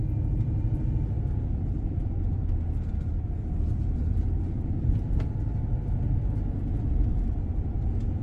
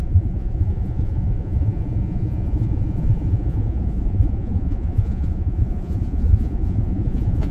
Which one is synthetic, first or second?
second